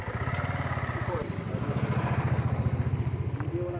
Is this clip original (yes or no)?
yes